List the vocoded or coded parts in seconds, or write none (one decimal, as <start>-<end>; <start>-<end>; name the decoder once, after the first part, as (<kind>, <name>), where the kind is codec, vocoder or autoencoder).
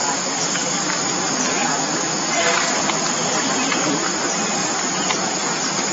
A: none